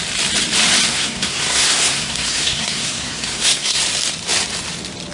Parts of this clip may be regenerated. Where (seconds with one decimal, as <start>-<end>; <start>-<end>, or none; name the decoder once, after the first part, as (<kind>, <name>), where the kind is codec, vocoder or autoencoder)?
0.9-3.8 (codec, SNAC)